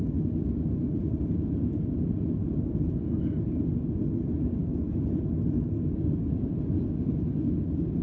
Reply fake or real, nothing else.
real